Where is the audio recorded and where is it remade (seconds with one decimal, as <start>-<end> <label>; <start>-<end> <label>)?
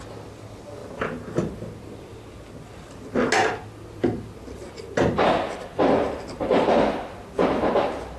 0.0-8.2 recorded